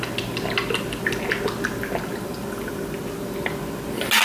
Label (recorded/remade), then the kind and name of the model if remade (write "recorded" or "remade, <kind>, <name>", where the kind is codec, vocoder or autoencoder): recorded